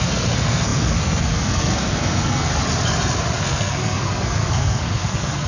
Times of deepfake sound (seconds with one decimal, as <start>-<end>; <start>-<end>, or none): 0.0-2.5; 3.4-5.5